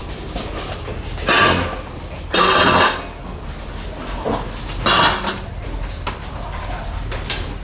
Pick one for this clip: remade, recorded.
recorded